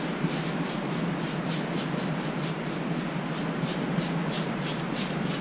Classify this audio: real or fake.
real